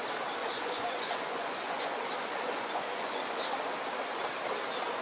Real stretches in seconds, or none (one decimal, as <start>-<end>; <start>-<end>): 0.0-0.4; 3.4-5.0